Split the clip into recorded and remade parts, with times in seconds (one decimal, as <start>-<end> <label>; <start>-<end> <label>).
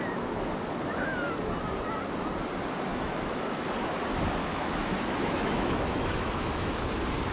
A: 0.0-2.9 recorded; 2.9-3.6 remade; 3.6-4.4 recorded; 4.4-6.8 remade; 6.8-7.3 recorded